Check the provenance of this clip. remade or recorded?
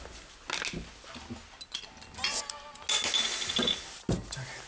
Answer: recorded